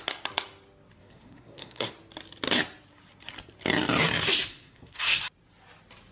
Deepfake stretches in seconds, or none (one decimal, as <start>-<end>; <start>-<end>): 1.0-1.9; 4.5-5.2

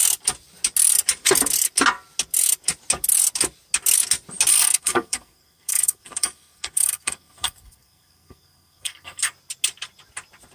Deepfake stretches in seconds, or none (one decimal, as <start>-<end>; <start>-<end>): 4.5-9.3

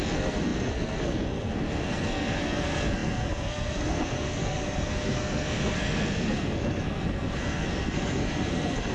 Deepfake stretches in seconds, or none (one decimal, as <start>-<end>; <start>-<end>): 0.0-8.9

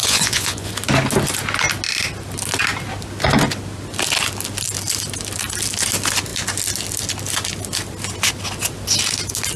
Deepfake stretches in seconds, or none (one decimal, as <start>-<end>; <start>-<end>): 0.0-0.7